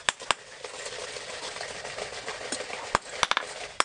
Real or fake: real